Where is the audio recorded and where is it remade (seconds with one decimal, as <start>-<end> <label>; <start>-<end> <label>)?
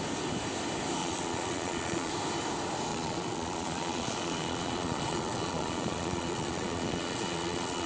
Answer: 0.0-1.0 recorded; 1.0-2.1 remade; 2.1-2.9 recorded; 2.9-7.9 remade